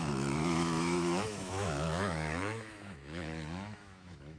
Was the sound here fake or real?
fake